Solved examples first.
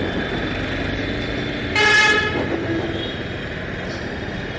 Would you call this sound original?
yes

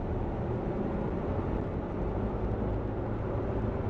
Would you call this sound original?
yes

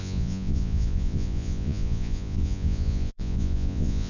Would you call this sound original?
no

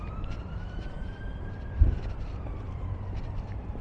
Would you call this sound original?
no